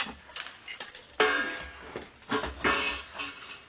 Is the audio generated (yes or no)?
no